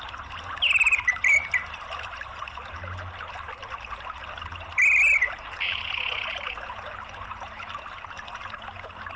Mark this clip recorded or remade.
recorded